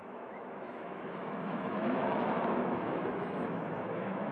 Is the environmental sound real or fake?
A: fake